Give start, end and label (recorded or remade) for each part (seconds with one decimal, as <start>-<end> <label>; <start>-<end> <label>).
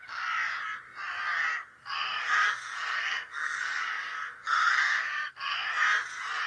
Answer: 0.0-1.8 recorded; 1.8-5.7 remade; 5.7-6.5 recorded